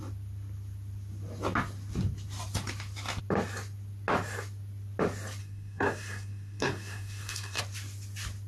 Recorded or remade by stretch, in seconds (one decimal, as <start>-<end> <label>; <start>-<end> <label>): 0.0-5.4 recorded; 5.4-7.6 remade; 7.6-8.5 recorded